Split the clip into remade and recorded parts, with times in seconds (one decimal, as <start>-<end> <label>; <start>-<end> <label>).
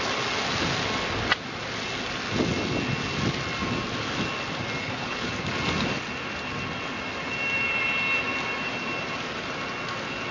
0.0-4.8 recorded; 4.8-5.3 remade; 5.3-10.3 recorded